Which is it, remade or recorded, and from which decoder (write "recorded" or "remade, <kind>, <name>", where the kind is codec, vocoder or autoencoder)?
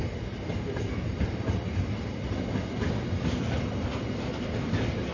recorded